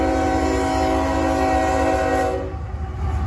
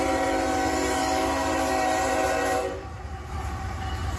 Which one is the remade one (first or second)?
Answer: second